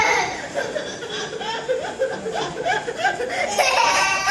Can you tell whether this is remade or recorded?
remade